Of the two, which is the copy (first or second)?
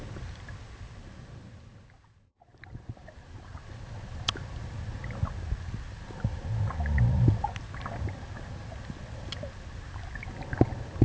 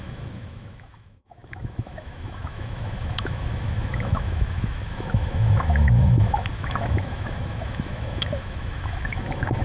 second